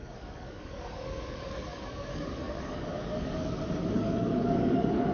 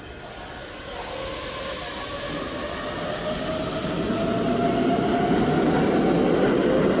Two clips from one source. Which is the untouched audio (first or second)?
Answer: second